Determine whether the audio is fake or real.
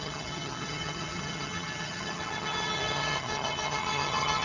fake